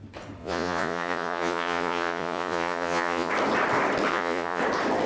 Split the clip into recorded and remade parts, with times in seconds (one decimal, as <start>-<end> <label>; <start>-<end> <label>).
0.0-0.4 recorded; 0.4-3.3 remade; 3.3-4.1 recorded; 4.1-4.6 remade; 4.6-5.1 recorded